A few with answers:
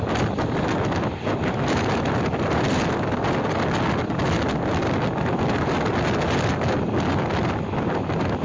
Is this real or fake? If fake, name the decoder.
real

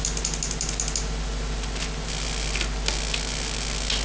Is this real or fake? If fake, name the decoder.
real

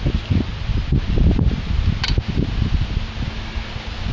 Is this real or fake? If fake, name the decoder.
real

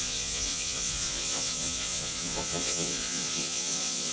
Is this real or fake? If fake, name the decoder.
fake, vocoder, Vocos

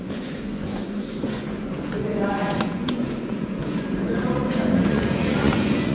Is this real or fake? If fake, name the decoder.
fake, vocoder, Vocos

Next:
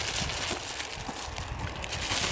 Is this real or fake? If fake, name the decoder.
real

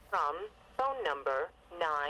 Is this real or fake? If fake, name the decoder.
real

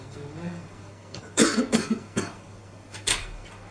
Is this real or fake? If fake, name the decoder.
fake, codec, SNAC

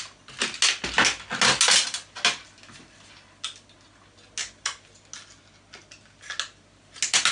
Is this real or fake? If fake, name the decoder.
real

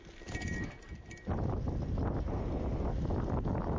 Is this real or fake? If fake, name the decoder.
real